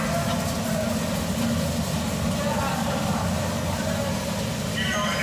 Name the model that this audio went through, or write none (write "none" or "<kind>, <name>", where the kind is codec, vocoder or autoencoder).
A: none